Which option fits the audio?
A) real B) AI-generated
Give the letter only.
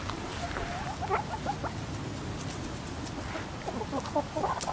A